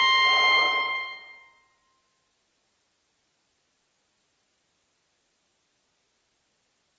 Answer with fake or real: real